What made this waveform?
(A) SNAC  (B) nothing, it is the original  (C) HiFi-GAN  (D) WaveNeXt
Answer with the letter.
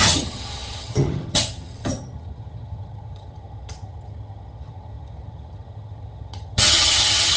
C